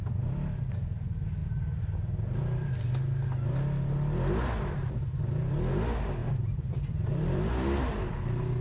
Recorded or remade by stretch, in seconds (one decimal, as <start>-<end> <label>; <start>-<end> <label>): 0.0-6.2 recorded; 6.2-8.1 remade; 8.1-8.6 recorded